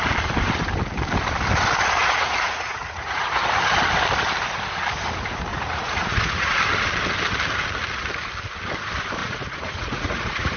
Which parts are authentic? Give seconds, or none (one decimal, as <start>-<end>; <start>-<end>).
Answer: 0.0-2.0; 3.4-5.5; 6.6-9.2

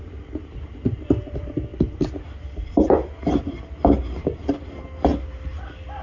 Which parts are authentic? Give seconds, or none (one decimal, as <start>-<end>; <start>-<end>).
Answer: 0.0-6.0

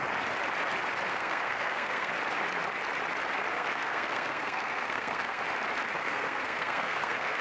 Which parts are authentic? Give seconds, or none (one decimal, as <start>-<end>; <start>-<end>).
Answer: 0.0-1.1; 2.1-3.5; 5.4-6.0

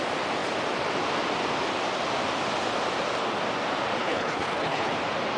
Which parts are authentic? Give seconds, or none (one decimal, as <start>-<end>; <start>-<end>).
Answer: 0.0-4.0; 4.9-5.4